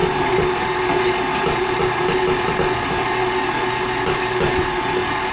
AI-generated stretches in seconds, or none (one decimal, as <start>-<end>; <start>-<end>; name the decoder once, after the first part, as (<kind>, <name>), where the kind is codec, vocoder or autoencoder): none